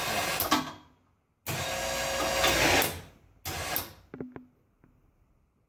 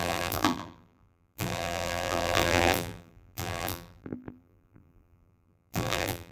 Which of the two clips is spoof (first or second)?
second